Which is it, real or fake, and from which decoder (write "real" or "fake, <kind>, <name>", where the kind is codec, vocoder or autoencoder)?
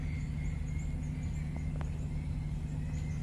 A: real